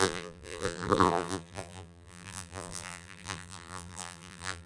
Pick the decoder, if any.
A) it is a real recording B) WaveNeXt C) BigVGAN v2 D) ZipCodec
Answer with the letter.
C